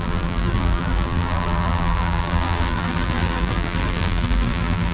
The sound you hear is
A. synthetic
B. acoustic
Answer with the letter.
A